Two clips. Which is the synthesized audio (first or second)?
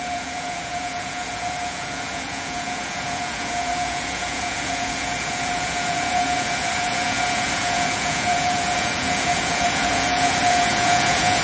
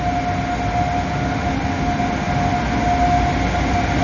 first